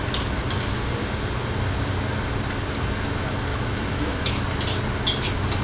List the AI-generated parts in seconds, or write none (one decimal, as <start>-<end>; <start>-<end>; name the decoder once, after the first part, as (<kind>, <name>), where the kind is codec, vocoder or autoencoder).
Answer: 3.5-4.4 (autoencoder, DAC-VAE)